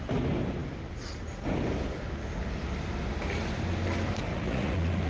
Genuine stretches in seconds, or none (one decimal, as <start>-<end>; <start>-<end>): 0.0-4.3